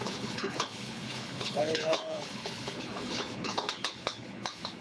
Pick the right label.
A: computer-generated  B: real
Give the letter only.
A